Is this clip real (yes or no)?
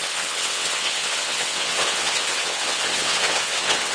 no